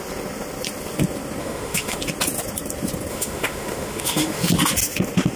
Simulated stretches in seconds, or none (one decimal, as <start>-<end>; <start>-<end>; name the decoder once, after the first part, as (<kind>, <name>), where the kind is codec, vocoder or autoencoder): 1.4-2.0 (autoencoder, DAC-VAE); 3.1-4.5